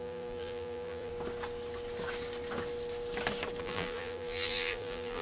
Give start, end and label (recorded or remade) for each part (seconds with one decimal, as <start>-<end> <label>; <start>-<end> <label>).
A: 0.0-1.1 remade; 1.1-3.6 recorded; 3.6-5.2 remade